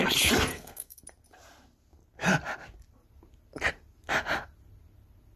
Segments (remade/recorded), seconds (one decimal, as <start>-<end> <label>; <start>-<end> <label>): 0.0-0.5 recorded; 0.5-1.0 remade; 1.0-5.4 recorded